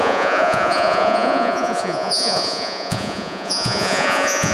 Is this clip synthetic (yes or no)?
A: yes